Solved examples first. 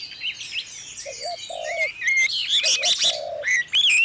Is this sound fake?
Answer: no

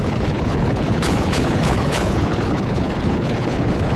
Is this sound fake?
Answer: yes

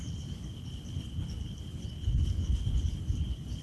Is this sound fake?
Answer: yes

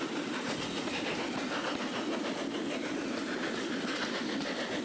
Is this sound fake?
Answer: no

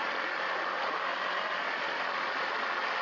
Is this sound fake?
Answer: no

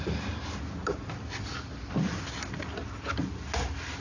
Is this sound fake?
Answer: no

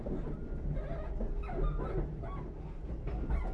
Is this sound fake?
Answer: no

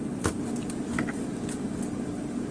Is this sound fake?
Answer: no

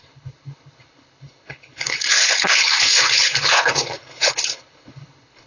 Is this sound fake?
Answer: yes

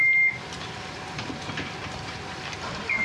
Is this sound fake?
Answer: no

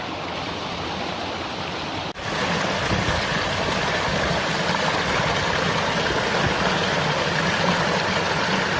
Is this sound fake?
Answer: no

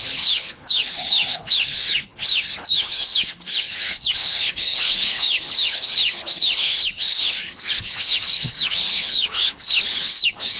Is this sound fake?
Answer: yes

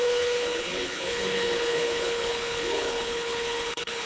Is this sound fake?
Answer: yes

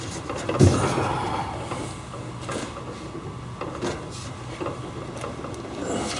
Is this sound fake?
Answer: no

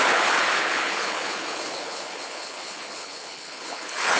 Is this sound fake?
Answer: yes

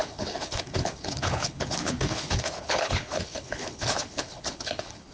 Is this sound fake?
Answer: yes